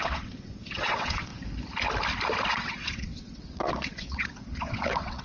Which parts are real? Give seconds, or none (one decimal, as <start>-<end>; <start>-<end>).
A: 1.3-2.5